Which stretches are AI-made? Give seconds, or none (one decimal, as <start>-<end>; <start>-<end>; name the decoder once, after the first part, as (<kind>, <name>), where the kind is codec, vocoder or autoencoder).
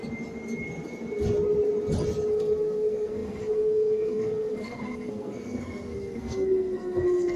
2.3-7.4 (codec, SNAC)